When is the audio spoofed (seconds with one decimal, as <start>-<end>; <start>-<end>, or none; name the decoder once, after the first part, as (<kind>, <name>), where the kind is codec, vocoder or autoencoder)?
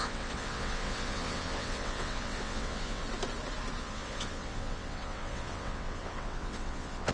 0.0-3.0 (vocoder, WaveNeXt); 3.8-7.1